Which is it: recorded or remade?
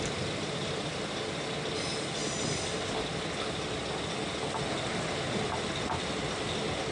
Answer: recorded